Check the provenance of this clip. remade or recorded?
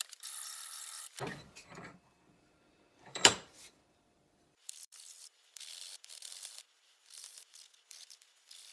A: remade